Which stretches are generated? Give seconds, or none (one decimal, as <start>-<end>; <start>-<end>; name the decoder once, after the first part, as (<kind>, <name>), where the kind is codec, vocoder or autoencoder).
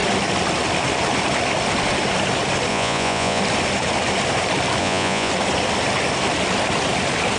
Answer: 2.7-3.4 (vocoder, Vocos); 4.8-5.3